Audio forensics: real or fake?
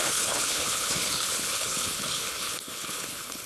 fake